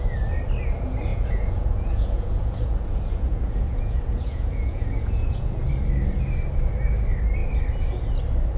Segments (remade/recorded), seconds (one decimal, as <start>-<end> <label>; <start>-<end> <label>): 0.0-1.1 recorded; 1.1-5.7 remade; 5.7-8.6 recorded